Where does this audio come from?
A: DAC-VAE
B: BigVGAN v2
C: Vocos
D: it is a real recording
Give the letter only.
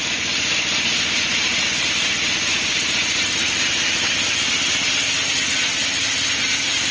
D